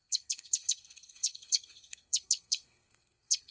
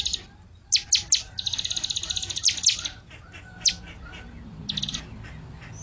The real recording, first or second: second